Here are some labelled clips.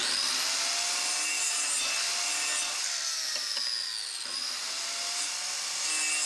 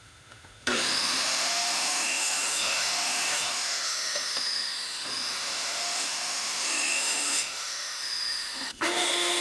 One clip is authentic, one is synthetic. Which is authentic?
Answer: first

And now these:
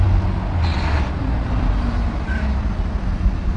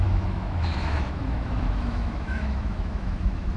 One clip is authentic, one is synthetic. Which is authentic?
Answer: first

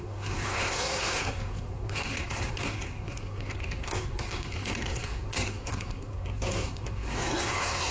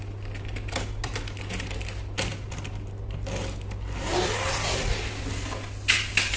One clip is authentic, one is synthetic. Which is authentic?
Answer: second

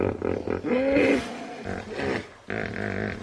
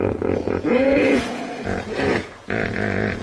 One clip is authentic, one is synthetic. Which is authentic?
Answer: first